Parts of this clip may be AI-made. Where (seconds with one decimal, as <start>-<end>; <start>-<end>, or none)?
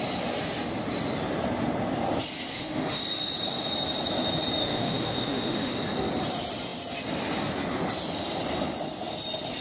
2.5-3.0; 4.6-5.7